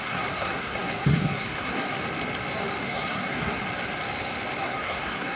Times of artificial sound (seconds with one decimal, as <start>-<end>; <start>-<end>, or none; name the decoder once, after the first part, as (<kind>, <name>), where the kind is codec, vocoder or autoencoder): 0.0-2.0 (codec, SNAC); 2.8-3.6; 4.6-5.4